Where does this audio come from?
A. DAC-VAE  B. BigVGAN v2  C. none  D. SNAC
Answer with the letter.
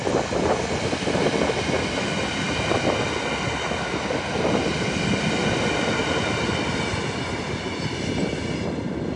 C